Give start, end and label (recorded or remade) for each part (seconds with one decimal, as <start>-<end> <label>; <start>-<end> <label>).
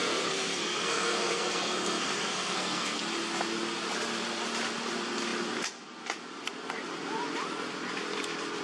0.0-3.0 remade; 3.0-8.6 recorded